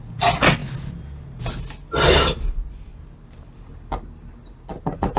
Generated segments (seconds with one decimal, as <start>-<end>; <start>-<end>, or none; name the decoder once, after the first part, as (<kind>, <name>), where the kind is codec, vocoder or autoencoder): none